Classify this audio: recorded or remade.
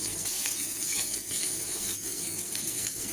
remade